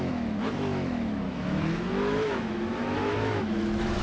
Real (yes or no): no